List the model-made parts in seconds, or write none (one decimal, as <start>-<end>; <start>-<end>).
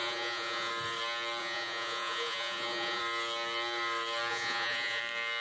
0.0-0.7; 1.4-3.0; 4.3-5.0